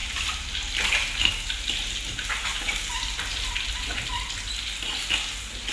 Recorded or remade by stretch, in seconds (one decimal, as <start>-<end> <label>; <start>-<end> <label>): 0.0-5.7 recorded